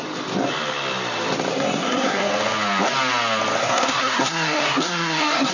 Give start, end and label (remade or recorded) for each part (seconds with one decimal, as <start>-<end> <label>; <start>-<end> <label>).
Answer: 0.0-1.5 recorded; 1.5-2.3 remade; 2.3-3.6 recorded; 3.6-5.5 remade